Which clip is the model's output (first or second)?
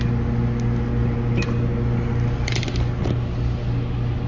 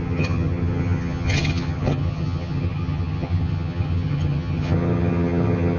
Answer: second